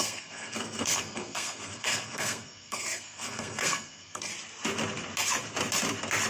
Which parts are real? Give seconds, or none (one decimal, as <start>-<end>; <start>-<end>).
4.3-6.3